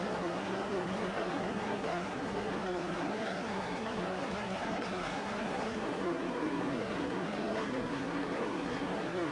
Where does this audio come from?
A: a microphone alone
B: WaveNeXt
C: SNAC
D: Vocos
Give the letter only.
C